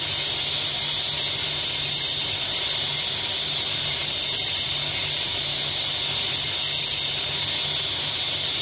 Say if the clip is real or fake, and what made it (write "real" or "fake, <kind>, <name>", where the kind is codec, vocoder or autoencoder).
real